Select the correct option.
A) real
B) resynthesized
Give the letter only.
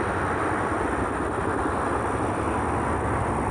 A